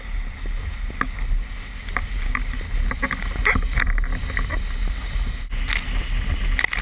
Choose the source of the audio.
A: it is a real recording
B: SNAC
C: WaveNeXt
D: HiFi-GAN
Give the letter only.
A